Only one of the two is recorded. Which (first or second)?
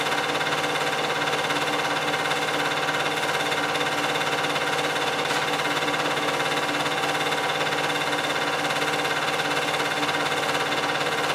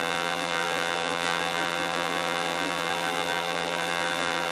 first